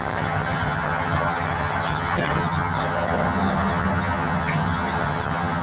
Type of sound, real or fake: fake